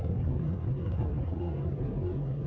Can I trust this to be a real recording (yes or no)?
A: no